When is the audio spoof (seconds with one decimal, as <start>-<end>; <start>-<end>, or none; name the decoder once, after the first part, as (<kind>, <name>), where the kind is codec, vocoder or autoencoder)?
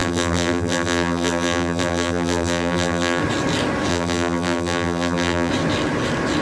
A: 0.0-3.2 (vocoder, BigVGAN v2); 3.9-5.5